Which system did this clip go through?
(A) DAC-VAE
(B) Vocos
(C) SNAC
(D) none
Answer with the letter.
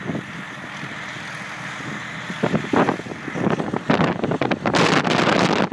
D